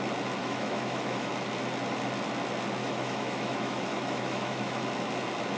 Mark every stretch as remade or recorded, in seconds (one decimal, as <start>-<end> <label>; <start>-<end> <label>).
0.0-0.4 recorded; 0.4-1.3 remade; 1.3-2.8 recorded; 2.8-4.8 remade; 4.8-5.6 recorded